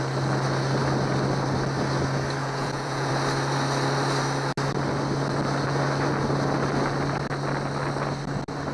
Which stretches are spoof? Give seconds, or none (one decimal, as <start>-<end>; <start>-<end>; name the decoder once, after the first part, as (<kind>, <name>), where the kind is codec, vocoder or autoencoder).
2.4-3.1 (vocoder, Vocos)